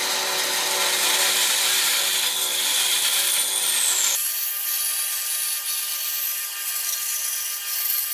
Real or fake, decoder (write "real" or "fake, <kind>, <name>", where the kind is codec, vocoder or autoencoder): real